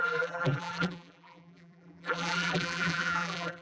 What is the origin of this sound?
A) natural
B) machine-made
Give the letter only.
B